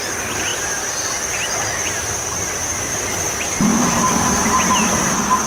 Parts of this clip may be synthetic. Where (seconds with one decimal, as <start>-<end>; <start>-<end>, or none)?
2.7-3.3; 3.7-5.5